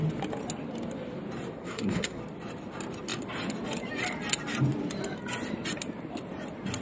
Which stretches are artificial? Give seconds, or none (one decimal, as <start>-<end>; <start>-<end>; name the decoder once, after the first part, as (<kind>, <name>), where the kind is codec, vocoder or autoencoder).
1.6-2.2 (codec, SNAC)